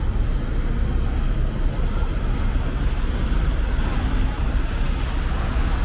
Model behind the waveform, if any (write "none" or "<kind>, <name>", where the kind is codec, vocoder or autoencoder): none